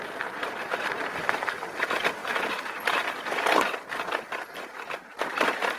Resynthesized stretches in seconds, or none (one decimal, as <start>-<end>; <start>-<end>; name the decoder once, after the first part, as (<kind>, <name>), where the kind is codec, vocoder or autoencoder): 0.0-2.2 (vocoder, BigVGAN v2); 3.2-5.8